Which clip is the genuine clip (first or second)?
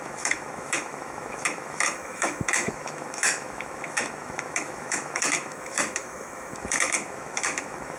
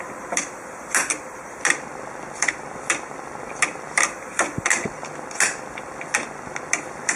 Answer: second